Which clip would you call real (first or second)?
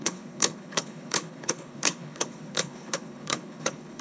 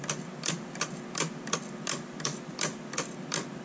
second